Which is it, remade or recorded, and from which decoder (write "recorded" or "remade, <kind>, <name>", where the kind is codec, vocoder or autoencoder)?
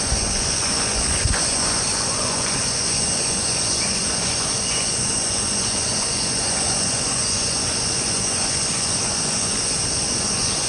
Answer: remade, vocoder, Vocos